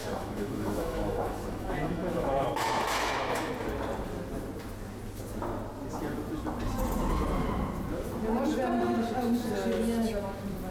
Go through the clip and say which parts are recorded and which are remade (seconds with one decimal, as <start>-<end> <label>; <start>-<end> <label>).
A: 0.0-3.5 remade; 3.5-10.7 recorded